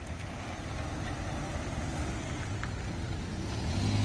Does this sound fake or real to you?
real